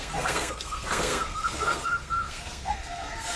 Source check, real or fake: fake